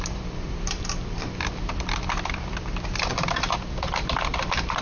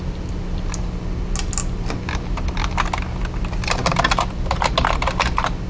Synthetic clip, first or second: first